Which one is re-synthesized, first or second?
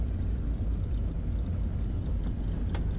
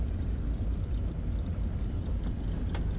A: second